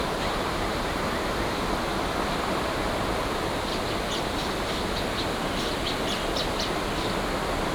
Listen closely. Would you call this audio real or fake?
real